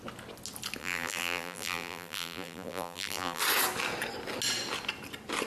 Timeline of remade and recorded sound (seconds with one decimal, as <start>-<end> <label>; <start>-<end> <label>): 0.0-0.8 recorded; 0.8-3.4 remade; 3.4-5.5 recorded